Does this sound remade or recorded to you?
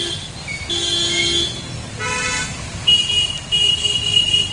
recorded